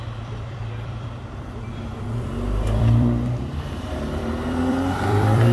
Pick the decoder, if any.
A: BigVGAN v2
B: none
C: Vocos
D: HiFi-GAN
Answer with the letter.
A